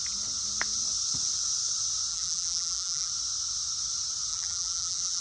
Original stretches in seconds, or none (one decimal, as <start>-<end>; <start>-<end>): 0.0-2.1; 3.1-4.3